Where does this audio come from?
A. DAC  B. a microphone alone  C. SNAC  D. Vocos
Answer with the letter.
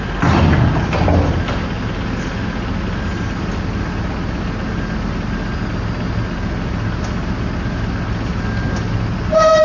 B